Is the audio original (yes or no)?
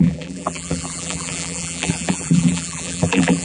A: no